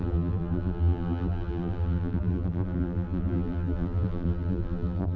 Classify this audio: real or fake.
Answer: fake